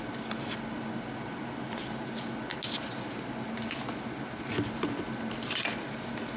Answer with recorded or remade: recorded